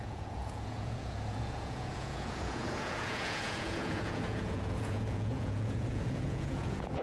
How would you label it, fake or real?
fake